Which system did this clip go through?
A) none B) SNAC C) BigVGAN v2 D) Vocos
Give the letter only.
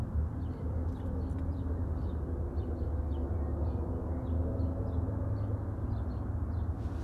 A